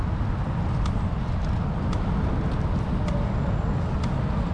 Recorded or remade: remade